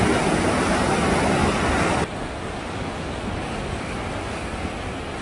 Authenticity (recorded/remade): recorded